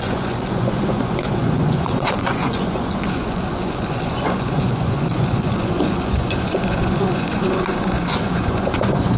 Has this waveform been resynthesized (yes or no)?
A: yes